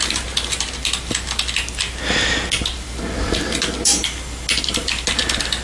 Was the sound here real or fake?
real